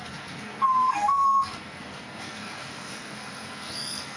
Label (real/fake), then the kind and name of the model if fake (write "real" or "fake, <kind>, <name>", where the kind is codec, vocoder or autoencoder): fake, codec, SNAC